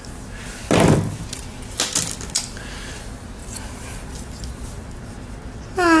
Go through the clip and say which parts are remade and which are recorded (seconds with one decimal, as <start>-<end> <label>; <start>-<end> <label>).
0.0-6.0 recorded